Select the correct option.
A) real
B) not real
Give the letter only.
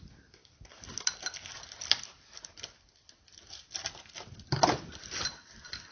A